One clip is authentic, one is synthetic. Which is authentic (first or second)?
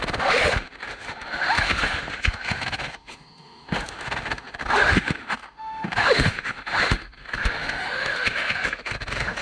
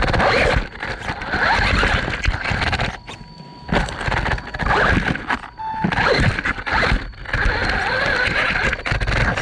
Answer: second